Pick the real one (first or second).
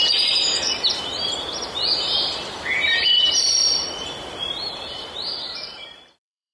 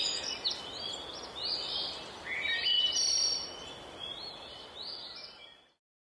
second